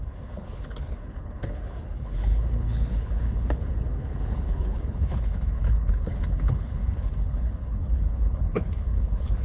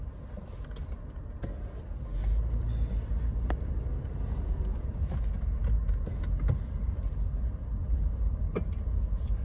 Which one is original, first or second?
second